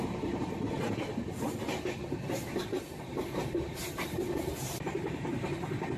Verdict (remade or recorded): remade